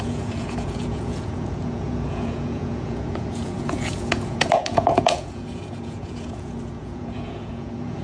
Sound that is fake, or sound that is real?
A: fake